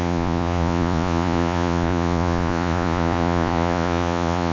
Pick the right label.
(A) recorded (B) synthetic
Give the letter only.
B